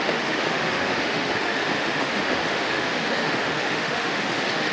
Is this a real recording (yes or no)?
no